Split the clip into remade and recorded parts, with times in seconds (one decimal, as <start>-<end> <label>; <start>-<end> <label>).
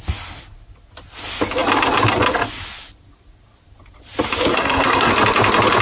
0.0-4.5 recorded; 4.5-5.1 remade; 5.1-5.8 recorded